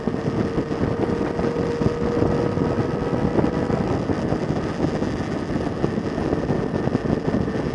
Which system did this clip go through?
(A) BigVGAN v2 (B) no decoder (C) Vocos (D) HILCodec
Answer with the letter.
B